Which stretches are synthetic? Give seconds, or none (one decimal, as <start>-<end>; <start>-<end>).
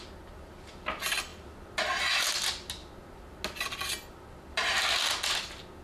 none